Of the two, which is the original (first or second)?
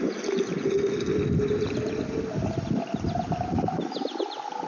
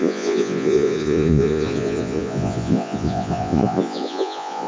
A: first